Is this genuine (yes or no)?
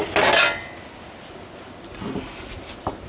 yes